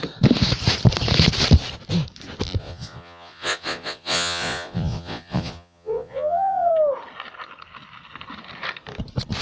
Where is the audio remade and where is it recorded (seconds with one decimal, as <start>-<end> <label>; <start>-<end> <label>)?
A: 0.0-2.6 recorded; 2.6-6.7 remade; 6.7-9.4 recorded